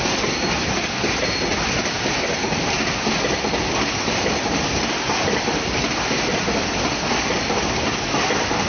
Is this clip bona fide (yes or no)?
no